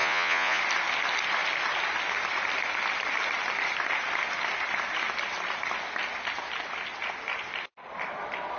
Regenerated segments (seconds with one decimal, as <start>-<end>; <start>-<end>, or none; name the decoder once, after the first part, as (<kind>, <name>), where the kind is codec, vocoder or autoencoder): 0.0-0.6 (vocoder, Vocos)